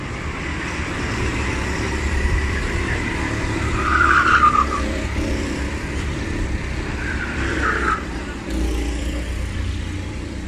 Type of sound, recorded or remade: remade